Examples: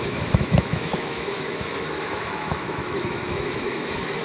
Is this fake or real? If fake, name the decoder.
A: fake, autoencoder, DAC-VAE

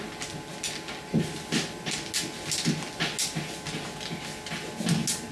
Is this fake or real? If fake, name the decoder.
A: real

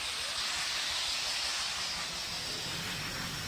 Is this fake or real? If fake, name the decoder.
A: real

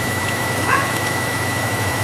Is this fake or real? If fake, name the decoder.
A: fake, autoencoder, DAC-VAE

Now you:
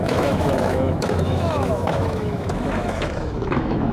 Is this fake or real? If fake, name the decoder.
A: fake, autoencoder, DAC-VAE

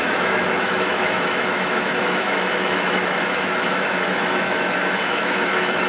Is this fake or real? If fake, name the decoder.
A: fake, autoencoder, DAC-VAE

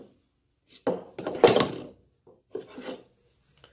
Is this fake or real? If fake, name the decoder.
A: real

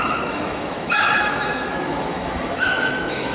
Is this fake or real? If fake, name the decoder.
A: fake, autoencoder, DAC-VAE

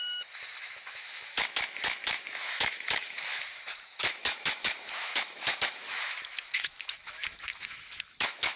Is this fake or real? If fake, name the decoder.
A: fake, autoencoder, DAC-VAE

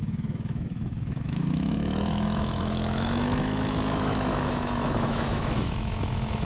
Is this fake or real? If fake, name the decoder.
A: fake, autoencoder, DAC-VAE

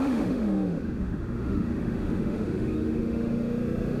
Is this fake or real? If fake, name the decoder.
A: fake, autoencoder, DAC-VAE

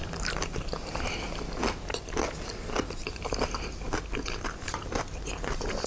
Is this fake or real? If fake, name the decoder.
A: real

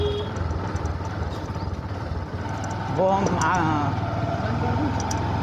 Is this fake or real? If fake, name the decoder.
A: real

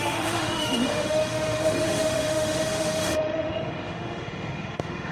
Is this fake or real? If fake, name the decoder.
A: fake, autoencoder, DAC-VAE